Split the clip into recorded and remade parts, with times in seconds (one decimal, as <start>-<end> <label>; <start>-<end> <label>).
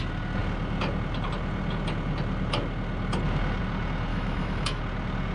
0.0-4.1 recorded; 4.1-4.8 remade; 4.8-5.3 recorded